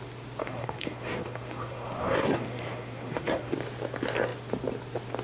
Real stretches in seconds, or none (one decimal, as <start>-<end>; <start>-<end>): 0.0-0.4; 3.5-5.2